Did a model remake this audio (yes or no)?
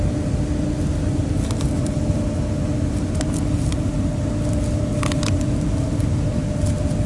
no